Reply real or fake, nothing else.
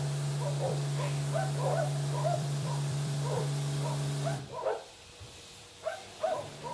fake